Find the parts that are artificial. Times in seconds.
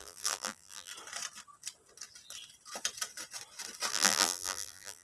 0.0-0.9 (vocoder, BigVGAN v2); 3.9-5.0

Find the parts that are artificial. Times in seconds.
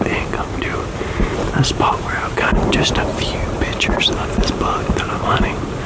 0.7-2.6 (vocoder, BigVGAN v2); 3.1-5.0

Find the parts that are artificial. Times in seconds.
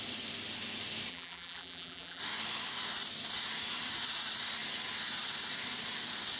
1.1-2.2 (vocoder, BigVGAN v2)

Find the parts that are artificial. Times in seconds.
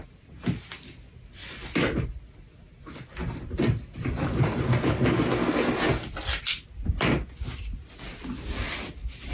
none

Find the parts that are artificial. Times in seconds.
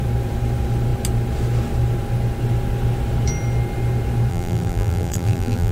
4.3-5.7 (vocoder, BigVGAN v2)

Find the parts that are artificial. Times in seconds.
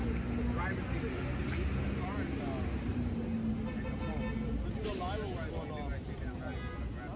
none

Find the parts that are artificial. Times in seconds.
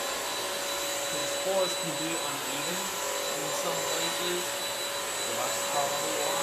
none